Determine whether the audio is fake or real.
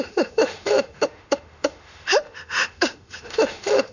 fake